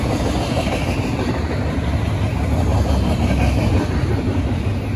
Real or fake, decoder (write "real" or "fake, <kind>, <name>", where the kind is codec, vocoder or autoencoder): real